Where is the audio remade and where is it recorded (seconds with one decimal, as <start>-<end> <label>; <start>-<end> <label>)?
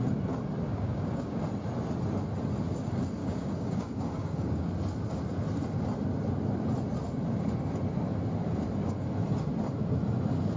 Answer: 0.0-0.7 recorded; 0.7-1.4 remade; 1.4-3.2 recorded; 3.2-4.7 remade; 4.7-10.6 recorded